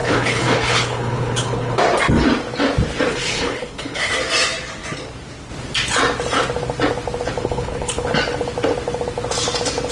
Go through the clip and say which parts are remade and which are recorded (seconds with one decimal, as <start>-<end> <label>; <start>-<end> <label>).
0.0-1.8 remade; 1.8-3.1 recorded; 3.1-4.1 remade; 4.1-7.4 recorded; 7.4-8.1 remade; 8.1-9.9 recorded